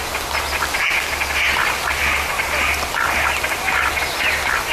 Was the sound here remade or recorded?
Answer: recorded